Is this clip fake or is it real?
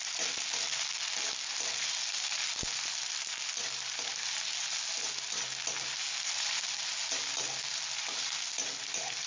real